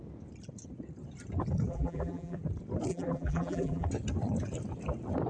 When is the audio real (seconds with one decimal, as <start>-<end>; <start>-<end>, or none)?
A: 0.0-1.7; 2.4-2.9; 3.9-5.3